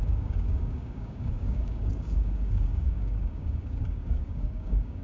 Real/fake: fake